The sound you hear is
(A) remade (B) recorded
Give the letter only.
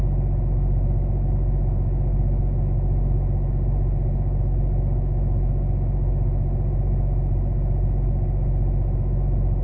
B